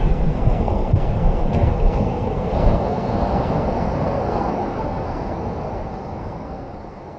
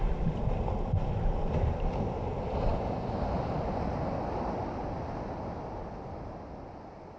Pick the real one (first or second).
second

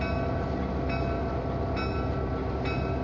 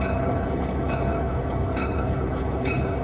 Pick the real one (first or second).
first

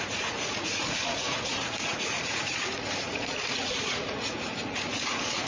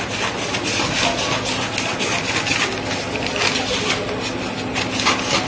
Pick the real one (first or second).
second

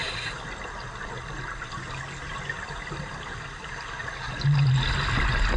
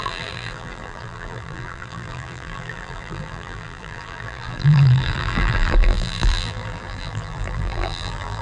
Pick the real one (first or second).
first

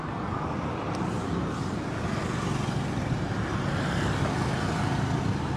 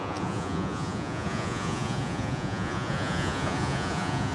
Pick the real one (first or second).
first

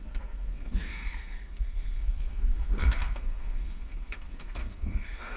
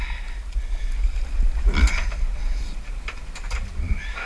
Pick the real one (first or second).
second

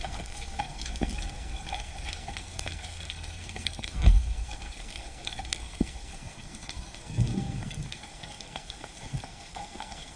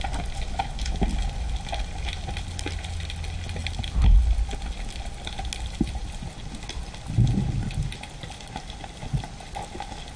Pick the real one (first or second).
second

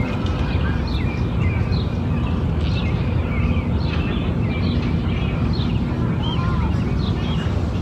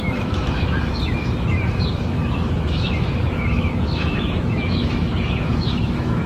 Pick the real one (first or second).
first